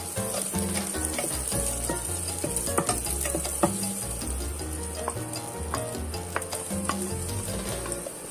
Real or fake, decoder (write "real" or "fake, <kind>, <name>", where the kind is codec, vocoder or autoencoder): real